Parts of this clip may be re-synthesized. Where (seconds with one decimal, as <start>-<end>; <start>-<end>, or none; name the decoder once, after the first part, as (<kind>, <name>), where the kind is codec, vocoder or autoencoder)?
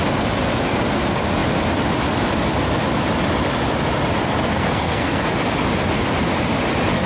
4.4-5.3 (codec, SNAC)